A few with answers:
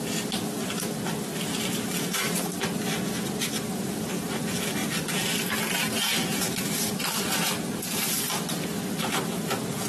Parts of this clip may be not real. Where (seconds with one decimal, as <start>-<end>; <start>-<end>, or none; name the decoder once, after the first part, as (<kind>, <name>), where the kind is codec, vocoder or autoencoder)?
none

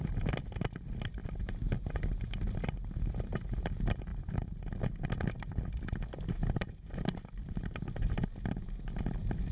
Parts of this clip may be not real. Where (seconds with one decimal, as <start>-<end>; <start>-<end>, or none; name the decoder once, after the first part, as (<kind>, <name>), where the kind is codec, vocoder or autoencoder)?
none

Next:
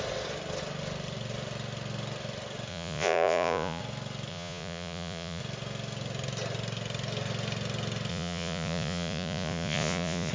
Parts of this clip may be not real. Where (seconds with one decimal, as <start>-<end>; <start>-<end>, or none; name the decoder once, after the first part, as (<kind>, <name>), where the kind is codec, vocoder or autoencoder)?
2.7-3.8 (vocoder, Vocos); 4.3-5.4; 8.1-10.3